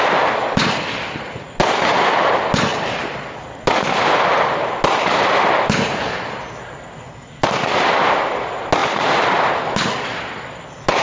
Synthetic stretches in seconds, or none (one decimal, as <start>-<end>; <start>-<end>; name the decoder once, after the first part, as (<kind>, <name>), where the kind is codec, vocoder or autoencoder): none

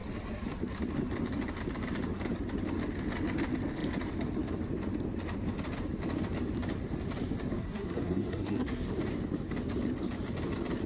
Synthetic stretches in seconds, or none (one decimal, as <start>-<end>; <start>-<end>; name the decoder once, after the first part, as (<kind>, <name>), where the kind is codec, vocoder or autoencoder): 7.6-8.9 (codec, SNAC)

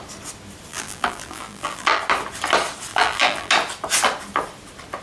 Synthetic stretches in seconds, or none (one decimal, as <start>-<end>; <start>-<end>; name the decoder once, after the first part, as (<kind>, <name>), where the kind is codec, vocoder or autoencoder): 0.7-2.0 (vocoder, BigVGAN v2); 2.9-3.5

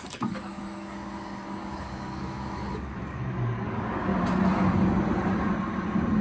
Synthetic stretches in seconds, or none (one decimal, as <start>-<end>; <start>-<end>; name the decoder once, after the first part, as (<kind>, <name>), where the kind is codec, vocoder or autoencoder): 0.0-4.1 (codec, DAC)

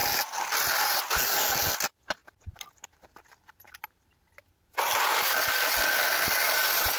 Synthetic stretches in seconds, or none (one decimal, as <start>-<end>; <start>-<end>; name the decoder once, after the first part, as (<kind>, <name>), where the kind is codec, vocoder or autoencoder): 0.5-7.0 (vocoder, BigVGAN v2)